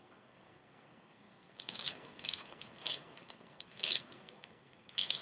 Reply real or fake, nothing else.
fake